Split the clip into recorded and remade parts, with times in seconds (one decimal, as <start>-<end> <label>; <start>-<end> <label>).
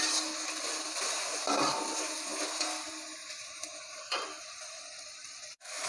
0.0-5.9 recorded